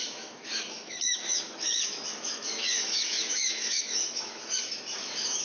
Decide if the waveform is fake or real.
fake